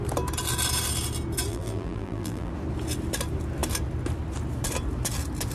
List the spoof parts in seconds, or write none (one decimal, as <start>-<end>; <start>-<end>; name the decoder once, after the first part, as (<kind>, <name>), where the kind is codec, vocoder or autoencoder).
1.5-2.5 (vocoder, BigVGAN v2)